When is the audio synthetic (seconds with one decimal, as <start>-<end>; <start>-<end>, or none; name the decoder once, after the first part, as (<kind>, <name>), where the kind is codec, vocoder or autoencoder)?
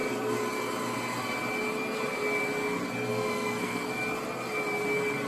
3.1-3.9 (codec, SNAC)